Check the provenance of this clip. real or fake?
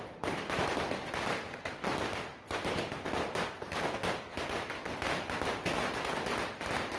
real